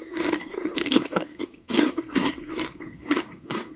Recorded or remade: remade